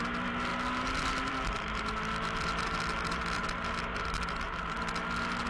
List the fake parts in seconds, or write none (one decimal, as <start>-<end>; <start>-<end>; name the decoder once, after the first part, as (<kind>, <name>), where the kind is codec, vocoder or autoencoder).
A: none